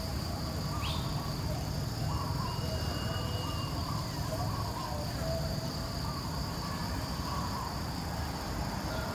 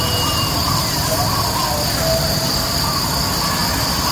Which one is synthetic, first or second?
first